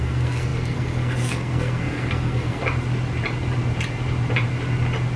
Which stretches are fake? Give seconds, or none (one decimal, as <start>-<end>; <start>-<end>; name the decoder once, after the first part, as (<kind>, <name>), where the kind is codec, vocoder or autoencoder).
0.0-2.6 (codec, SNAC)